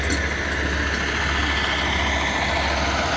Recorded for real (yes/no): yes